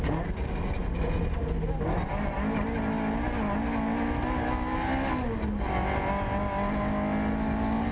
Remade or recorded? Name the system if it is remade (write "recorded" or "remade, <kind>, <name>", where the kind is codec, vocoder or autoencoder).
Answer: recorded